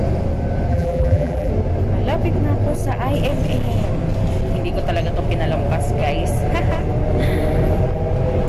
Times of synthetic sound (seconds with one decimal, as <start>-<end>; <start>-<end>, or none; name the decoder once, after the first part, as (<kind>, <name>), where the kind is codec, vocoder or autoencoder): 0.7-1.5 (vocoder, BigVGAN v2)